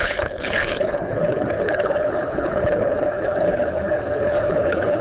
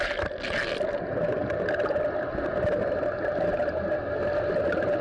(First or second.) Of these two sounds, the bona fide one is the second